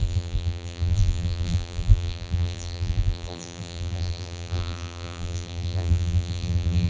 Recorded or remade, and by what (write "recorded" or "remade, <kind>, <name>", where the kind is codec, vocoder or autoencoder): remade, vocoder, BigVGAN v2